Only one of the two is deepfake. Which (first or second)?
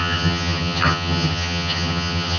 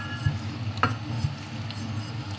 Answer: first